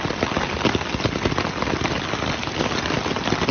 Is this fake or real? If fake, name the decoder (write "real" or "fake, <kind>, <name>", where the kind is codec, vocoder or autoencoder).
real